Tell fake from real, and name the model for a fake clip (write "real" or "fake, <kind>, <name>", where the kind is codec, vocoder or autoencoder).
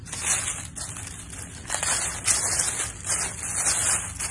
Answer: real